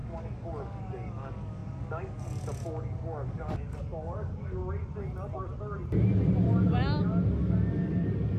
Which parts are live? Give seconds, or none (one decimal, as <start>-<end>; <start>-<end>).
4.6-7.3